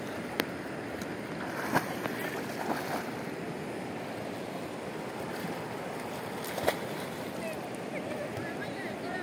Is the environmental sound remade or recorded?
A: recorded